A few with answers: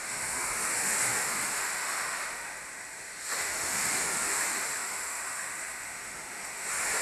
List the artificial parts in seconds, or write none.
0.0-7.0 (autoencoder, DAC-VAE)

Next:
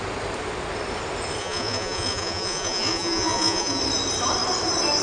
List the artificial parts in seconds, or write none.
1.4-3.8 (vocoder, Vocos)

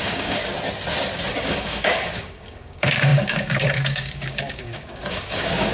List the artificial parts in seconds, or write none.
0.0-0.4 (codec, DAC); 1.3-5.7

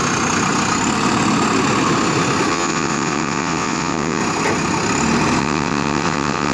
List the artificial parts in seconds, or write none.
2.5-4.2 (vocoder, WaveNeXt); 5.4-6.5

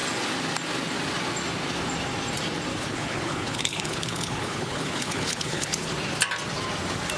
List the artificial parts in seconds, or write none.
2.7-5.9 (codec, HILCodec)